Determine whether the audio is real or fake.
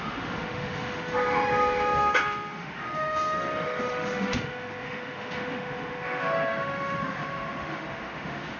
fake